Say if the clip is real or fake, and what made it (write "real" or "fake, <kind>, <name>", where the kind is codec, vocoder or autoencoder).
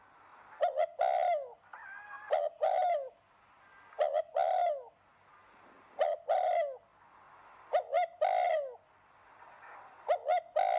real